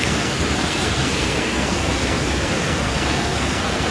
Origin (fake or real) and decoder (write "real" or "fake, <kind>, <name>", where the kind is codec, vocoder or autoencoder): fake, codec, SNAC